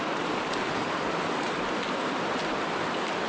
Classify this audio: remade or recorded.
recorded